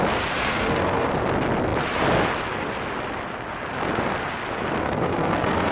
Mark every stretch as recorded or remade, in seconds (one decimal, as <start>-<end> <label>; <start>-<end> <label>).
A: 0.0-0.4 recorded; 0.4-1.1 remade; 1.1-4.8 recorded; 4.8-5.7 remade